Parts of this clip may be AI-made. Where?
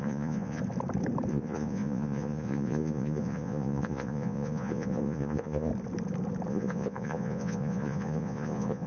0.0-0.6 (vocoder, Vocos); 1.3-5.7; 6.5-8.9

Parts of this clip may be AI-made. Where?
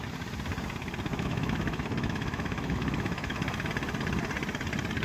1.1-3.7 (autoencoder, DAC-VAE)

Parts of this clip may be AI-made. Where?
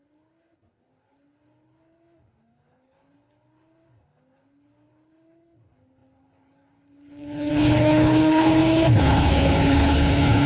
0.0-10.5 (codec, HILCodec)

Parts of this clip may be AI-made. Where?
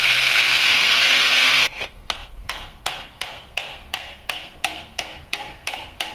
0.0-6.1 (codec, SNAC)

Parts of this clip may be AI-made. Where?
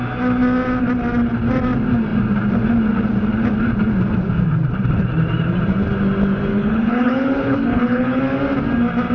6.5-8.2 (codec, HILCodec)